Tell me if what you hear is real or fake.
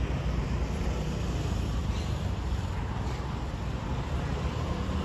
real